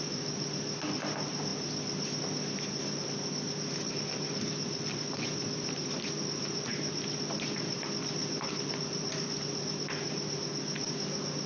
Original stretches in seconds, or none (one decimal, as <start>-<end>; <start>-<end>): 0.0-11.5